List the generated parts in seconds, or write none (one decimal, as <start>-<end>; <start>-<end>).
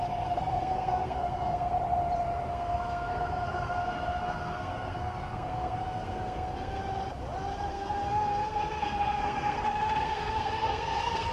0.0-1.7; 2.5-6.8; 7.7-11.3